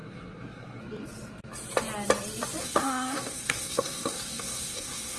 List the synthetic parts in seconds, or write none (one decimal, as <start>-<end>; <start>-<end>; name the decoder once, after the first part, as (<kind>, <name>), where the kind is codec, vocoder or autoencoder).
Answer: 0.0-0.8 (codec, SNAC); 2.6-5.2